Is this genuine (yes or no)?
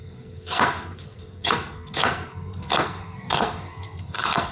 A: no